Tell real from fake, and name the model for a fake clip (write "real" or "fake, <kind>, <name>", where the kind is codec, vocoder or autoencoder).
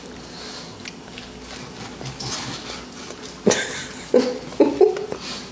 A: real